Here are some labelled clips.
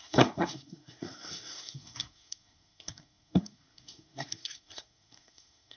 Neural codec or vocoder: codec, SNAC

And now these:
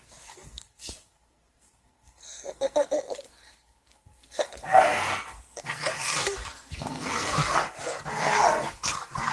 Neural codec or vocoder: codec, SNAC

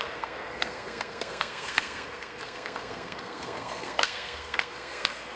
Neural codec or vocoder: codec, SNAC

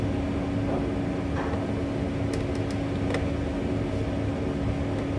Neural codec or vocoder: none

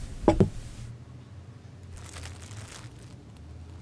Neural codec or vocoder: none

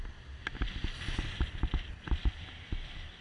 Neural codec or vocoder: none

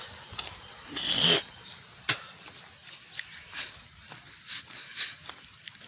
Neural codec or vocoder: none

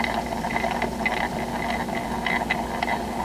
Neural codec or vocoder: none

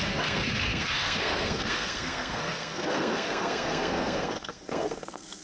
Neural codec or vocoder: codec, SNAC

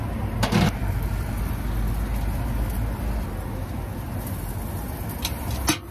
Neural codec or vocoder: none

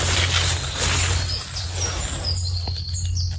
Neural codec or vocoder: none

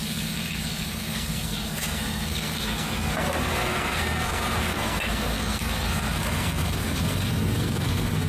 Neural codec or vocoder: codec, SNAC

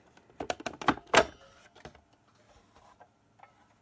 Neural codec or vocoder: none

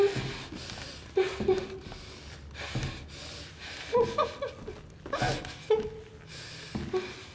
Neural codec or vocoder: none